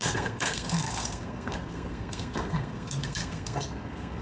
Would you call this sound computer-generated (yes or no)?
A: yes